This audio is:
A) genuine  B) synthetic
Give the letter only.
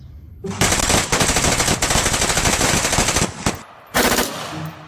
A